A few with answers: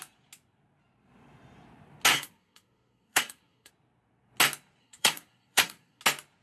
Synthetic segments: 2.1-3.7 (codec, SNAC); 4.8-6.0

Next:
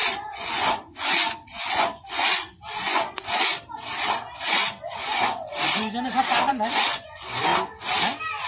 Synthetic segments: 0.0-3.5 (vocoder, Vocos); 4.5-5.5; 6.5-7.5

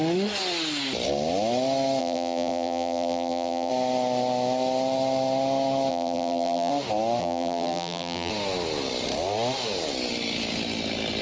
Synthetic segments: 2.0-3.7 (vocoder, BigVGAN v2); 5.9-6.7; 7.2-8.3

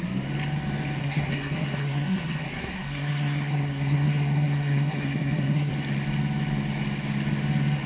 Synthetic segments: 1.0-5.7 (codec, SNAC)

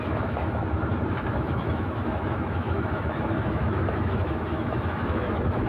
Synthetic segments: 0.0-0.6 (autoencoder, DAC-VAE); 1.1-5.7

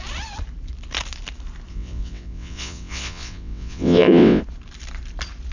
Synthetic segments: 1.7-4.4 (vocoder, WaveNeXt)

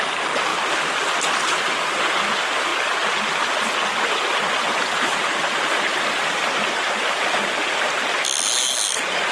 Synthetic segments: none